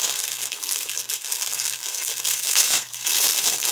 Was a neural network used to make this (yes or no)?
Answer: yes